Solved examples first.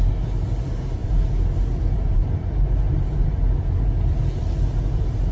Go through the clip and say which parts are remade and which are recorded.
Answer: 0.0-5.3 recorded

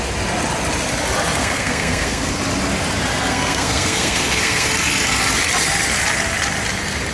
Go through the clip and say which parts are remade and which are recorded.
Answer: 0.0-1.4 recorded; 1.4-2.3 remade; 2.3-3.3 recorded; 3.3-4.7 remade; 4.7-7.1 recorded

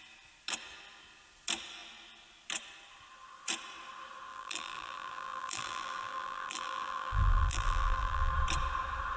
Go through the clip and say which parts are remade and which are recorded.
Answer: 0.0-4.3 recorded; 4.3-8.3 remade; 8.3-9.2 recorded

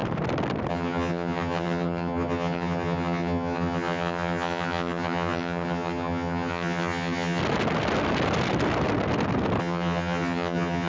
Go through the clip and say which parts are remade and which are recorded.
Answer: 0.0-0.7 recorded; 0.7-7.4 remade; 7.4-9.6 recorded; 9.6-10.9 remade